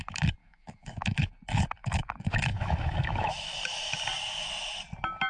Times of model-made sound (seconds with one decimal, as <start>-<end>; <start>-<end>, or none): 0.4-1.3; 1.8-3.9